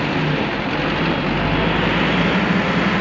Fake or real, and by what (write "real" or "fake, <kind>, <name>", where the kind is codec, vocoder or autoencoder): real